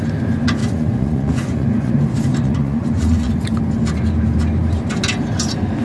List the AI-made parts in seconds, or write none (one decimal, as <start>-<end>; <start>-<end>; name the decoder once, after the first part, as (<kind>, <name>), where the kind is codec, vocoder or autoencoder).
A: 0.6-1.9 (vocoder, Vocos); 2.3-3.3